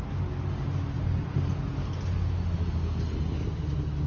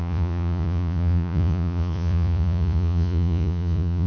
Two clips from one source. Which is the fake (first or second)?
second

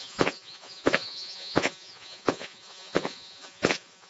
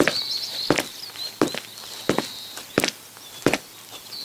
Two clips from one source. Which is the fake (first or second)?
first